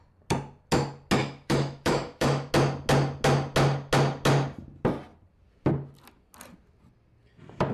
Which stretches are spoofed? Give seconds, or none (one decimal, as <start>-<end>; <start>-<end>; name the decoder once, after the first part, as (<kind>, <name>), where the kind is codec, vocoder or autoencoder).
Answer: 1.2-2.5 (autoencoder, DAC-VAE)